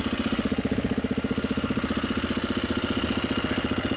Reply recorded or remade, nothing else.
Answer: recorded